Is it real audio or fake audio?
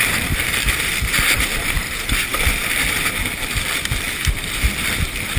fake